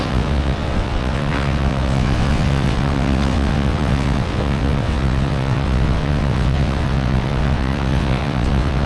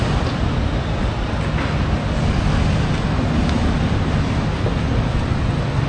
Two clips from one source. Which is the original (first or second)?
second